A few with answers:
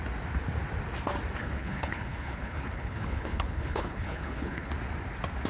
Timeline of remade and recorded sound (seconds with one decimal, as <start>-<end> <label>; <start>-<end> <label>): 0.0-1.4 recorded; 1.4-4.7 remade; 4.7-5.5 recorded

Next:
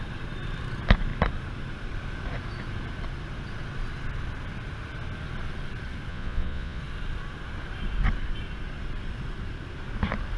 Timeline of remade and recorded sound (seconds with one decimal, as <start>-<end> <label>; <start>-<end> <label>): 0.0-6.1 recorded; 6.1-6.8 remade; 6.8-10.4 recorded

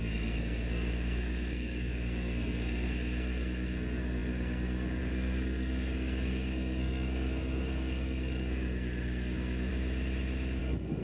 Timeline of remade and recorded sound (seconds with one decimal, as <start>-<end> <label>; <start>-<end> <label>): 0.0-9.7 remade; 9.7-10.6 recorded; 10.6-11.0 remade

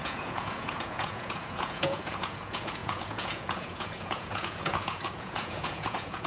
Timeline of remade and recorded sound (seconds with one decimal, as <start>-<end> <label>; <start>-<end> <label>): 0.0-6.3 remade

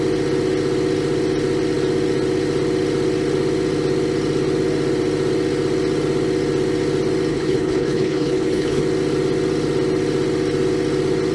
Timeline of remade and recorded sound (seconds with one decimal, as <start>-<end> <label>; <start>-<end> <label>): 0.0-7.3 recorded; 7.3-8.8 remade; 8.8-11.3 recorded

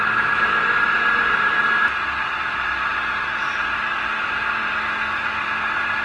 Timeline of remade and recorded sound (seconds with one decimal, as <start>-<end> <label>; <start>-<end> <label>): 0.0-6.0 recorded